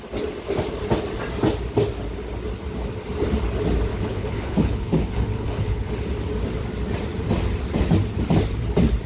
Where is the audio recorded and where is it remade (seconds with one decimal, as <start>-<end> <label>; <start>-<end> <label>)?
0.0-3.9 recorded; 3.9-5.9 remade; 5.9-9.1 recorded